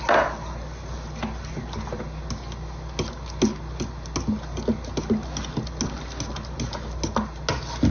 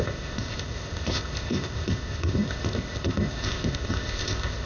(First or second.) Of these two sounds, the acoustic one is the first